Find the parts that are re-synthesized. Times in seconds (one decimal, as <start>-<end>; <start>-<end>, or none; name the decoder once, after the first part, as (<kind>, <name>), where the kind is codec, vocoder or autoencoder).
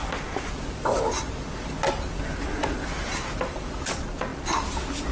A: none